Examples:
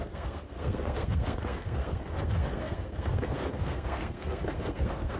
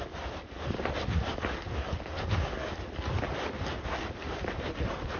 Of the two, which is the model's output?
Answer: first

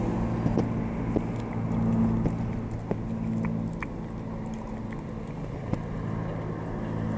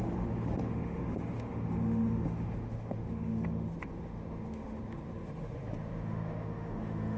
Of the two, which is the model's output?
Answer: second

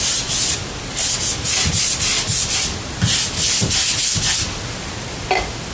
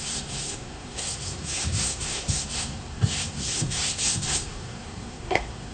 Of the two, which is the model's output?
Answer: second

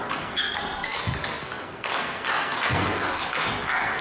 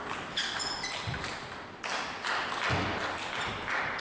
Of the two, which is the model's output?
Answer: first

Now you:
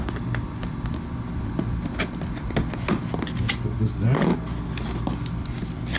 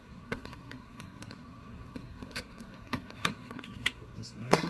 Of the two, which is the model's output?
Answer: second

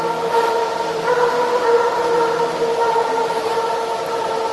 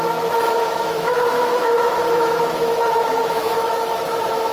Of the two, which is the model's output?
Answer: second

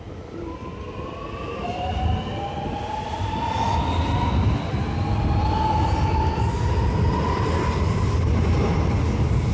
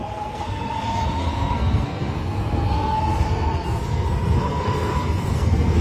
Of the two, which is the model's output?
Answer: second